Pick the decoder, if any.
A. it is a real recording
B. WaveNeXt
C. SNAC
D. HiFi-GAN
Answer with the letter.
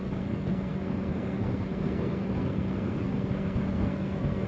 C